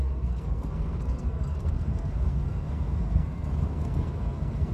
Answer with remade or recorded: remade